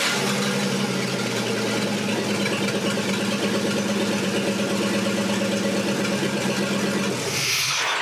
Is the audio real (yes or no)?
yes